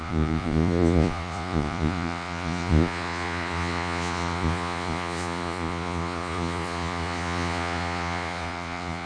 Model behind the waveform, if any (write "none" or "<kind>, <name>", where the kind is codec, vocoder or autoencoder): vocoder, Vocos